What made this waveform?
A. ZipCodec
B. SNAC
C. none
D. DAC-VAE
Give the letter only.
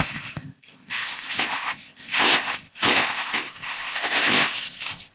A